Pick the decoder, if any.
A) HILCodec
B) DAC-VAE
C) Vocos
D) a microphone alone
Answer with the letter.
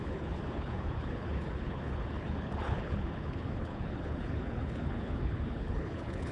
A